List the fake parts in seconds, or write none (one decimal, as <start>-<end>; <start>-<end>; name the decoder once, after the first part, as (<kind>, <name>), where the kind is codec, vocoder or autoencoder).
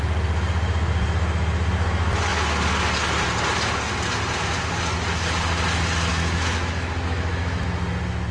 6.1-7.6 (autoencoder, DAC-VAE)